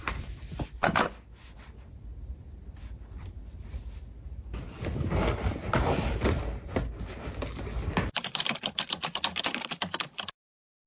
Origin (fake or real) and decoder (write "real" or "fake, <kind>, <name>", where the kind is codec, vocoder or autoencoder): real